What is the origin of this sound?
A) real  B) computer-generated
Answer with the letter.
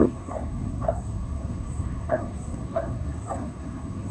B